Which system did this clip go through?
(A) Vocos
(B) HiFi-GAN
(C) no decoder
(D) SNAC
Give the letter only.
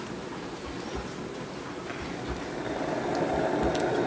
C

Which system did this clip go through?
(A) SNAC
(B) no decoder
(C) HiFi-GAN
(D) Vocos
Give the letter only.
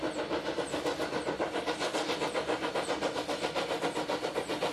B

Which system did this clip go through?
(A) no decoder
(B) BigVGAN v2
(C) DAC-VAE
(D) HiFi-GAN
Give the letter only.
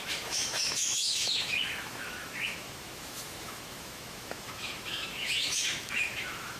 C